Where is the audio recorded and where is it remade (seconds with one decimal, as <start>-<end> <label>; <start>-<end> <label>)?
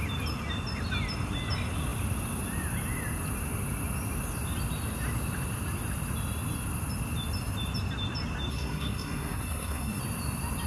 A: 0.0-8.5 recorded; 8.5-10.0 remade; 10.0-10.7 recorded